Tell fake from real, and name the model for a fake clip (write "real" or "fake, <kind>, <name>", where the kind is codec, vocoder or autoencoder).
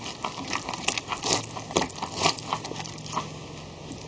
real